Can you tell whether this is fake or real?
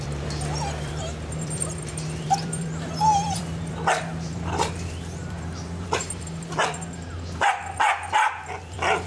fake